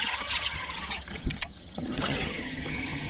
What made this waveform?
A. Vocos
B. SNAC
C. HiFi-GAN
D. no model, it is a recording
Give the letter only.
C